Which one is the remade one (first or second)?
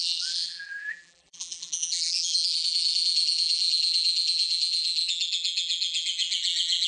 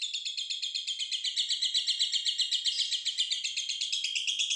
first